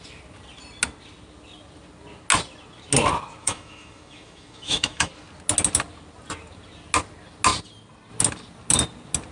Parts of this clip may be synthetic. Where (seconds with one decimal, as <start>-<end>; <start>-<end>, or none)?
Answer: 3.4-5.1